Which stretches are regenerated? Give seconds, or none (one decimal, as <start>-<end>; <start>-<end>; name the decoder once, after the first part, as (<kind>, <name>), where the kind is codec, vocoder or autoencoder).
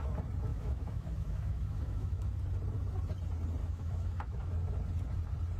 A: 0.5-2.4 (autoencoder, DAC-VAE); 3.6-4.5